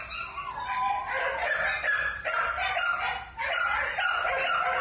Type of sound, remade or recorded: recorded